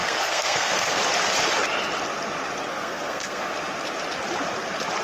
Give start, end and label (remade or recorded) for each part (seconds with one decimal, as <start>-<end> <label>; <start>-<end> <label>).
0.0-1.0 remade; 1.0-2.7 recorded; 2.7-3.5 remade; 3.5-5.0 recorded